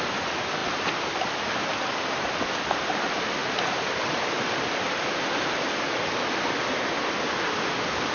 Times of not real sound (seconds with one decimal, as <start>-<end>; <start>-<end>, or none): none

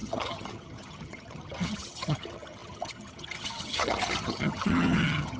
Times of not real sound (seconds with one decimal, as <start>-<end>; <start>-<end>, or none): 0.0-5.4

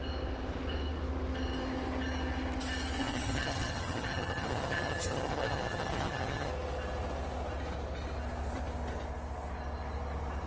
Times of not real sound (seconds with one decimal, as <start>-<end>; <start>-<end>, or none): 3.0-6.5

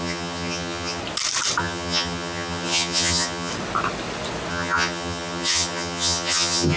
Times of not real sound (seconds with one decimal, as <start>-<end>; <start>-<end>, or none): 0.0-1.0; 1.6-3.5; 4.5-6.8